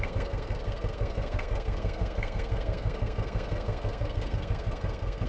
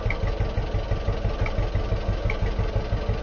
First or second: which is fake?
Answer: first